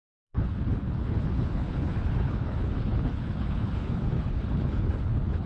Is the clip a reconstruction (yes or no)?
yes